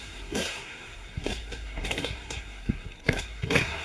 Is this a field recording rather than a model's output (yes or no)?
no